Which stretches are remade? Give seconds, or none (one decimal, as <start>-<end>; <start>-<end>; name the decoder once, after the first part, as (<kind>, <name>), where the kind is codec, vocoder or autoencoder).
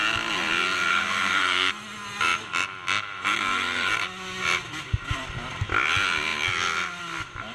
0.9-1.7 (codec, SNAC)